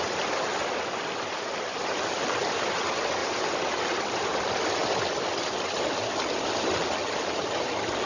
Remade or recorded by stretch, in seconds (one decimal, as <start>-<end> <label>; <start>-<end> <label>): 0.0-3.2 recorded; 3.2-3.8 remade; 3.8-7.0 recorded; 7.0-7.6 remade; 7.6-8.1 recorded